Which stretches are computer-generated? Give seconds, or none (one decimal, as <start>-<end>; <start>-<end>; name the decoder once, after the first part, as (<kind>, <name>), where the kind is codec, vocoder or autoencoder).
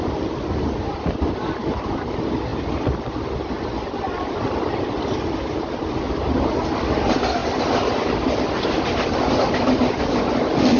none